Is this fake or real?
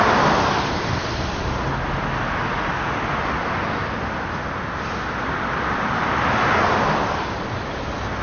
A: real